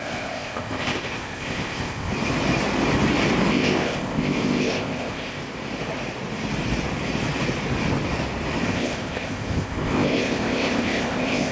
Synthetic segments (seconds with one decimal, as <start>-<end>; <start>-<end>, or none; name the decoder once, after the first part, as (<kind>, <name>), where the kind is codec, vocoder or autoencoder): 0.0-2.1 (codec, ZipCodec); 3.5-5.4; 8.7-11.5